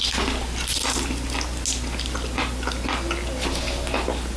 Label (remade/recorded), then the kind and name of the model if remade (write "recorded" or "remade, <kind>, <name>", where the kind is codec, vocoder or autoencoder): recorded